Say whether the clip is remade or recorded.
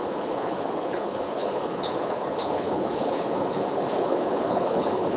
remade